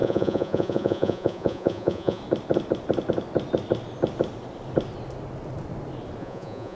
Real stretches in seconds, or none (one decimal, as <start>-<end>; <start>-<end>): 2.2-6.2